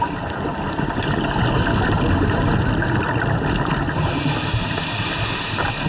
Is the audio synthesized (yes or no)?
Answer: no